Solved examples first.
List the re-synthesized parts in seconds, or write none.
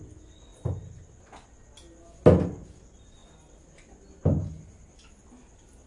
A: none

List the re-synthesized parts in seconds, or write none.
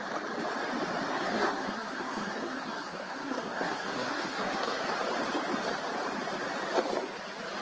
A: 1.1-4.8 (codec, SNAC)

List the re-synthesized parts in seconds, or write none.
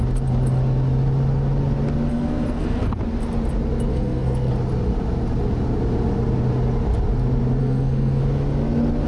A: 2.1-3.0 (codec, SNAC); 3.9-4.5; 7.6-8.2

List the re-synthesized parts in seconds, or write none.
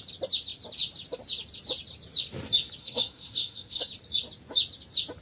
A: 2.8-3.9 (codec, SNAC)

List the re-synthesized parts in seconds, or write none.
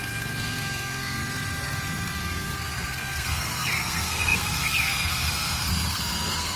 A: 0.0-1.2 (codec, SNAC); 2.2-6.6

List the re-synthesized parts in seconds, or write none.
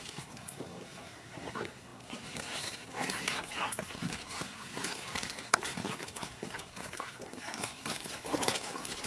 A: 0.0-9.1 (codec, SNAC)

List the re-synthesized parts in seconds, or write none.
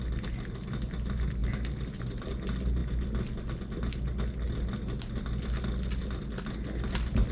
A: none